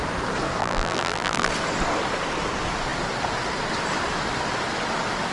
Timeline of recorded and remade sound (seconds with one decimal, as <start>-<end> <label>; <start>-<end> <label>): 0.0-0.6 recorded; 0.6-1.5 remade; 1.5-5.3 recorded

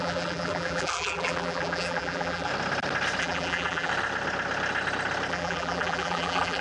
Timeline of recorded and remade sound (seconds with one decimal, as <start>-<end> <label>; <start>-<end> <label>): 0.0-2.5 remade; 2.5-3.2 recorded; 3.2-3.9 remade; 3.9-5.3 recorded; 5.3-6.6 remade